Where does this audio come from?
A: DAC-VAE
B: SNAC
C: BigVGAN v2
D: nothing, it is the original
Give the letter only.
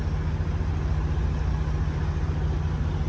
D